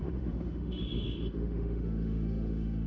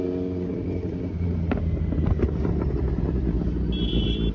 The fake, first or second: first